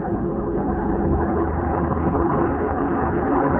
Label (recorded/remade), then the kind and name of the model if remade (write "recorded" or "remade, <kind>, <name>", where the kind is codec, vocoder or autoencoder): remade, codec, HILCodec